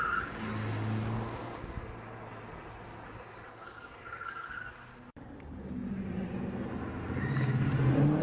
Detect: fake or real real